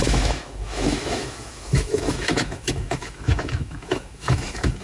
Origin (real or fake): fake